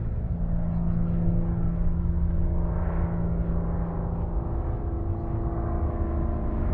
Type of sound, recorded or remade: recorded